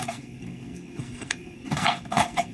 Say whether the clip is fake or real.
fake